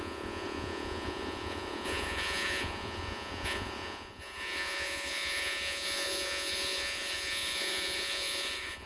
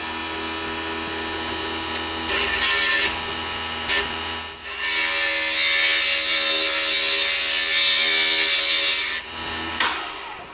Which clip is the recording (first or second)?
second